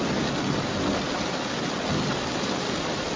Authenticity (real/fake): real